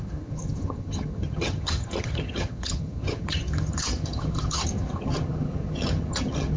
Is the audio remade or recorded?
remade